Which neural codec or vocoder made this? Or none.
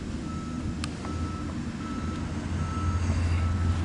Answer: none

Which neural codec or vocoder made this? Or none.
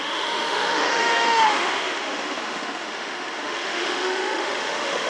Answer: autoencoder, DAC-VAE